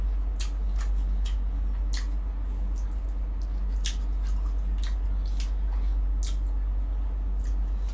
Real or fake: real